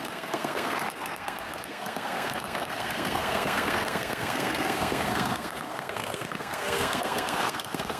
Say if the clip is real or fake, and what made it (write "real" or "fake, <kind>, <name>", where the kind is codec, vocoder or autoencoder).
fake, codec, SNAC